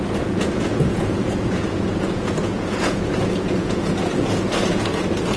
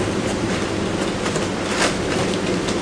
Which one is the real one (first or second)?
second